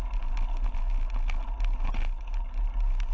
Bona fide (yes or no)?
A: yes